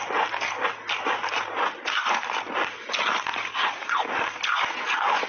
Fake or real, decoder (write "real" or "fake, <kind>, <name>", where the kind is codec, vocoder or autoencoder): real